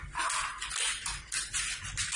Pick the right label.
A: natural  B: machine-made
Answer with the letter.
A